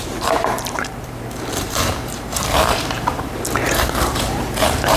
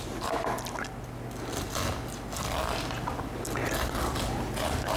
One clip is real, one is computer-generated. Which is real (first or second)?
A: second